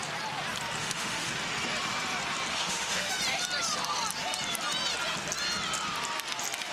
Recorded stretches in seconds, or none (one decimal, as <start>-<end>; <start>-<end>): 0.0-0.8; 1.3-2.5; 3.1-6.7